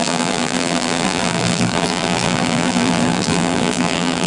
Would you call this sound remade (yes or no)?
yes